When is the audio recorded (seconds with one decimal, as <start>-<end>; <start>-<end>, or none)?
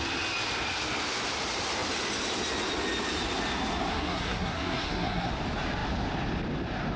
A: 0.0-3.9; 5.3-7.0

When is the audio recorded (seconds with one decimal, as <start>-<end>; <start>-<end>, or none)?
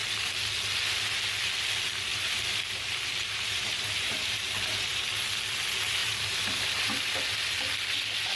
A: 0.0-2.1; 5.0-6.0; 7.1-8.4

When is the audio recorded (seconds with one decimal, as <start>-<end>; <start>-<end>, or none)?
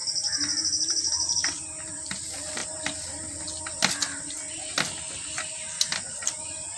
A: 0.0-6.8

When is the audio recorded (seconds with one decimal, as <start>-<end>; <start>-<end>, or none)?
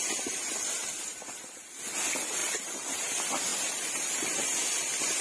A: 0.0-2.4; 3.1-3.5; 4.4-5.2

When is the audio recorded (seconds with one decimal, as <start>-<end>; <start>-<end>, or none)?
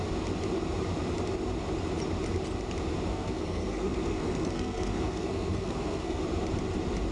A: 0.0-3.1; 6.2-7.1